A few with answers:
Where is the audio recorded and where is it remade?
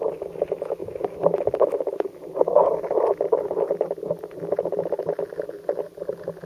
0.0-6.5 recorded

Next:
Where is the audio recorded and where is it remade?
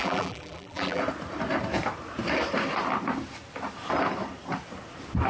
0.0-1.0 remade; 1.0-5.3 recorded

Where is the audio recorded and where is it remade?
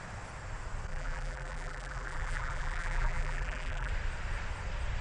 0.0-0.9 recorded; 0.9-3.9 remade; 3.9-5.0 recorded